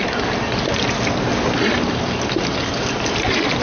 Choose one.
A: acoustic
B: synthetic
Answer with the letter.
A